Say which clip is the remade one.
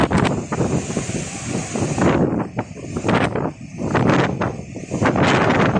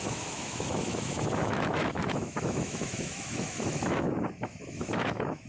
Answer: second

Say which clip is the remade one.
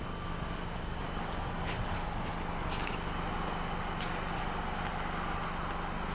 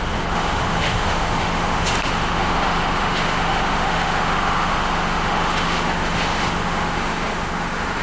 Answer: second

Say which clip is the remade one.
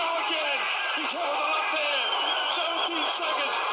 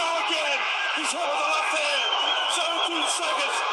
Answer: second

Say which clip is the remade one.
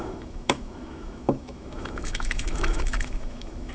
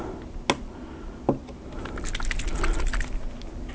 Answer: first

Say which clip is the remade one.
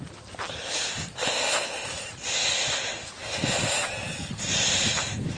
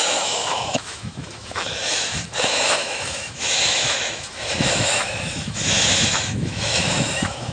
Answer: second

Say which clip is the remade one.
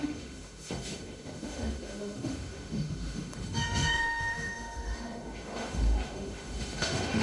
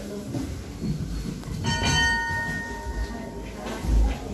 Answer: first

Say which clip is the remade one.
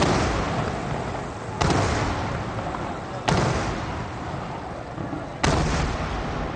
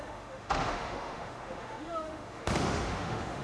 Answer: second